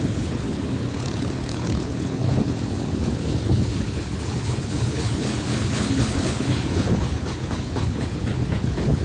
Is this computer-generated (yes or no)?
yes